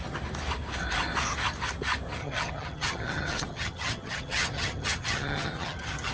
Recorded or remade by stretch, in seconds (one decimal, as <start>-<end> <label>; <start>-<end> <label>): 0.0-2.2 recorded; 2.2-6.1 remade